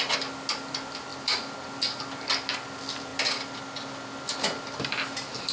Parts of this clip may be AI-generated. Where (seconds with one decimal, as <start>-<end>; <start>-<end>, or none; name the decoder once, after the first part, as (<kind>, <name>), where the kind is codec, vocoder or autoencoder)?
none